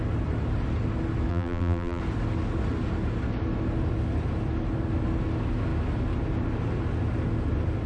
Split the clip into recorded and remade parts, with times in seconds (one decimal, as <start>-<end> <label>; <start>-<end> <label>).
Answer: 0.0-1.3 recorded; 1.3-2.0 remade; 2.0-7.9 recorded